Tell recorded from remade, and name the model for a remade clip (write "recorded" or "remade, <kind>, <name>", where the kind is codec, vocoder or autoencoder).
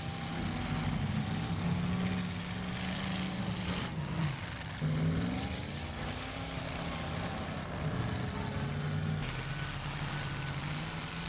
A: recorded